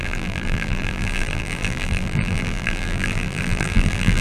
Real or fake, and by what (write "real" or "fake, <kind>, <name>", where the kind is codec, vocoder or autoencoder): fake, vocoder, BigVGAN v2